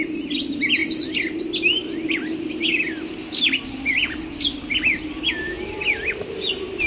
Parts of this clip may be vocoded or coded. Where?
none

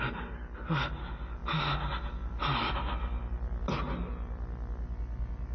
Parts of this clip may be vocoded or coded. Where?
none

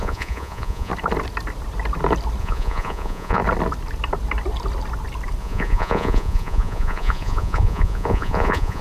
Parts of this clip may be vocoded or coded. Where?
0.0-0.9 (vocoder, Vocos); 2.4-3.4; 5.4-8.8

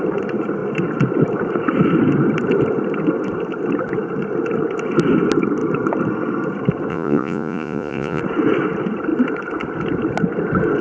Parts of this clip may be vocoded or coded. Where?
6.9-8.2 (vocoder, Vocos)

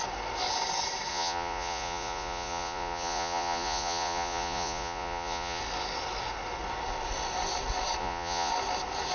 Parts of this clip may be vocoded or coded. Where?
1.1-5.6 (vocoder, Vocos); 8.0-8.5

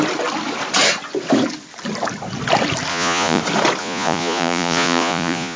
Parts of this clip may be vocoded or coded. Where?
2.9-3.4 (vocoder, Vocos); 3.8-5.6